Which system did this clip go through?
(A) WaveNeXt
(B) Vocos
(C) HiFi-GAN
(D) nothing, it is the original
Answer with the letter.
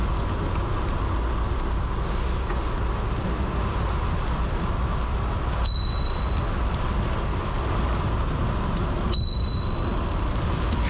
D